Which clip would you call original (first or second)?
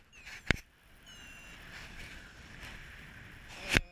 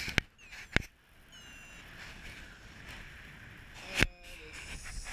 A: second